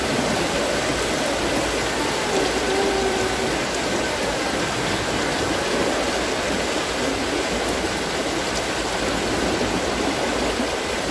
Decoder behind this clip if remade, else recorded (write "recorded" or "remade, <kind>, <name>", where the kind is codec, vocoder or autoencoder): remade, vocoder, BigVGAN v2